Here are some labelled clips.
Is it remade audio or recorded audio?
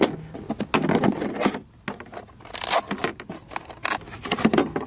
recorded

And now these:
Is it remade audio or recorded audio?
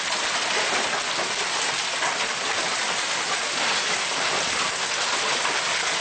recorded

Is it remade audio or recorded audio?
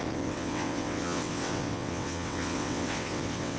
remade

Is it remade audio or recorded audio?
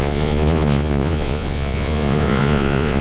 remade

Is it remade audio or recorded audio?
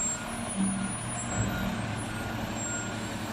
recorded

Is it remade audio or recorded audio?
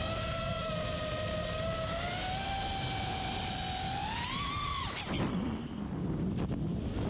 recorded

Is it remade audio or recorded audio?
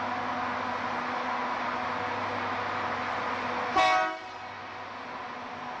recorded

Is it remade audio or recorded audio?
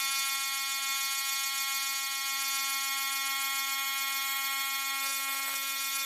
remade